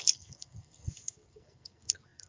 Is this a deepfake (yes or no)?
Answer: yes